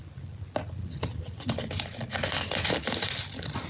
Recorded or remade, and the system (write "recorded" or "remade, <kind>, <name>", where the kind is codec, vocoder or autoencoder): recorded